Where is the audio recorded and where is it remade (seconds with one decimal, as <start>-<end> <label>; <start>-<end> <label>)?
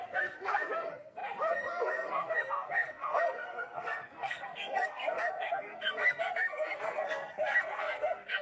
0.0-8.4 remade